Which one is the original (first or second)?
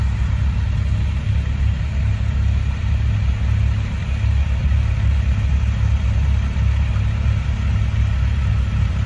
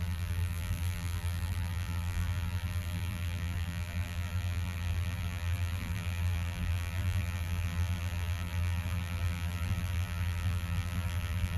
first